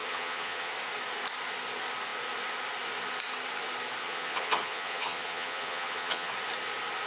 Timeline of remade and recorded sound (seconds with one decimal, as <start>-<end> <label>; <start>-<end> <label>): 0.0-0.7 remade; 0.7-4.0 recorded; 4.0-6.3 remade; 6.3-7.1 recorded